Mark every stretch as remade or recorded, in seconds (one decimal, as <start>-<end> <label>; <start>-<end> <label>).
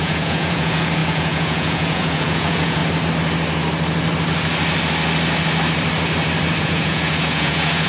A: 0.0-2.8 remade; 2.8-6.6 recorded; 6.6-7.9 remade